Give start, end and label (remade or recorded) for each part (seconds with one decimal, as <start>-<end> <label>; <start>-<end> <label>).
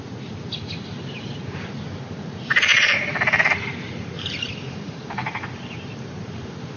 0.0-2.7 recorded; 2.7-6.8 remade